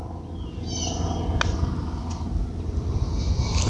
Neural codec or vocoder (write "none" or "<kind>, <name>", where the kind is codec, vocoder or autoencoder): none